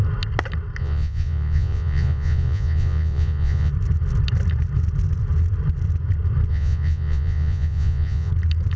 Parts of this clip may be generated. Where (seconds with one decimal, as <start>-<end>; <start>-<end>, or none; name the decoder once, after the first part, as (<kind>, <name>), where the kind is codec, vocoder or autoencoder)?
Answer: 0.8-3.7 (vocoder, Vocos); 6.5-8.3